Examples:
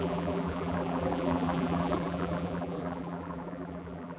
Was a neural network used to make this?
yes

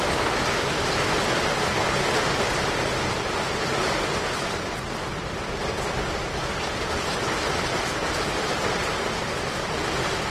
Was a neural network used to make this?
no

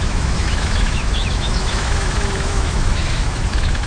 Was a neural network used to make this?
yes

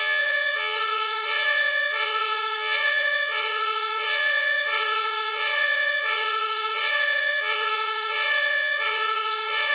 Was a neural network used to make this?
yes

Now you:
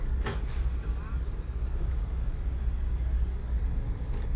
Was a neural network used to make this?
yes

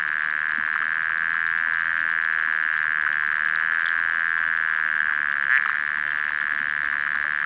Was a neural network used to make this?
no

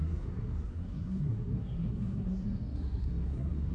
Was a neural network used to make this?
yes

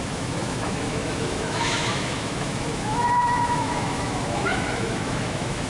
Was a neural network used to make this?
yes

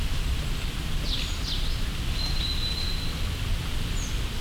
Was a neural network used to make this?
no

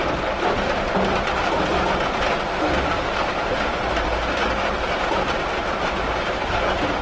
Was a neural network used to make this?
no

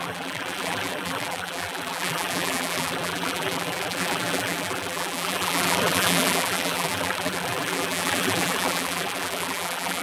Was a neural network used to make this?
yes